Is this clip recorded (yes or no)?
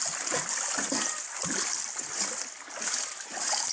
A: yes